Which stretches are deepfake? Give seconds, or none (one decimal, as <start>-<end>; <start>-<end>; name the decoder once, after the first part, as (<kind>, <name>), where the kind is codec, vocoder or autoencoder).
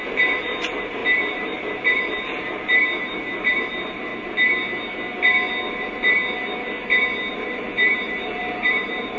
0.0-4.1 (vocoder, BigVGAN v2); 5.7-6.2; 7.3-9.2